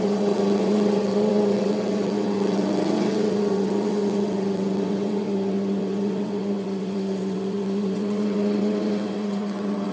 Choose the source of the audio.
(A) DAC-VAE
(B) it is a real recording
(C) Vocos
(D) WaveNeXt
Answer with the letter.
D